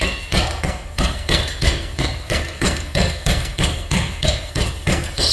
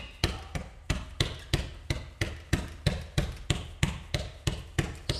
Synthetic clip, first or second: first